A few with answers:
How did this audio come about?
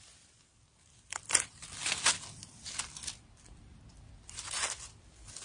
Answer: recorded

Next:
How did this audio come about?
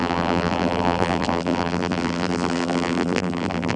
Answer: remade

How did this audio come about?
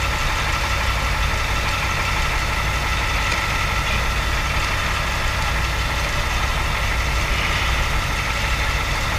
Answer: recorded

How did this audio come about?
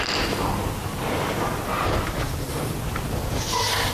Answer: recorded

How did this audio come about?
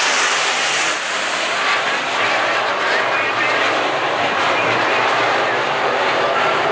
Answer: remade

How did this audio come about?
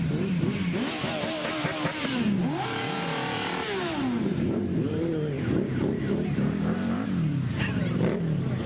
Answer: remade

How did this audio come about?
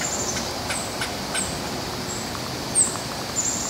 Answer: recorded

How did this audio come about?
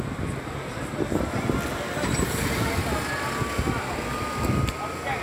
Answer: recorded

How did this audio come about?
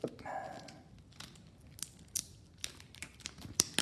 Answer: recorded